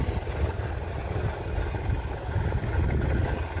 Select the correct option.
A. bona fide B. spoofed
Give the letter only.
A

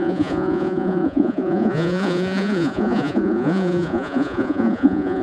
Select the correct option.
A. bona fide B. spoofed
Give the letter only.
B